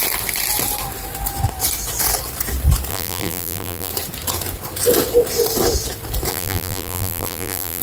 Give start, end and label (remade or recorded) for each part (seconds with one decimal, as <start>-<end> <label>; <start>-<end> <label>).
0.0-2.9 recorded; 2.9-3.9 remade; 3.9-6.3 recorded; 6.3-7.8 remade